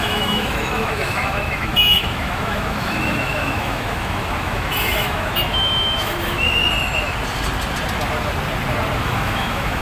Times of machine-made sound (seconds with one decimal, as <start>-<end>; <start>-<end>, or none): 0.0-6.6; 9.0-9.8